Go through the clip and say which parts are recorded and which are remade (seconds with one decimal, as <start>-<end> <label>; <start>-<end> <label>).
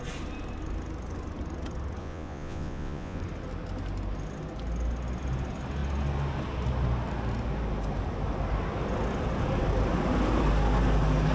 0.0-2.0 recorded; 2.0-3.2 remade; 3.2-11.3 recorded